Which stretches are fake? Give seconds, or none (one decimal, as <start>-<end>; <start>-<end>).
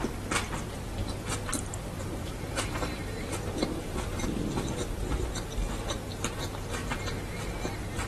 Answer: 1.5-4.4; 6.8-7.4